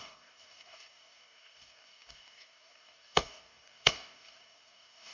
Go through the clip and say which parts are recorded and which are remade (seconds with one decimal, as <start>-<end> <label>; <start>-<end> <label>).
0.0-5.1 remade